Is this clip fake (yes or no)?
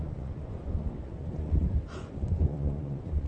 yes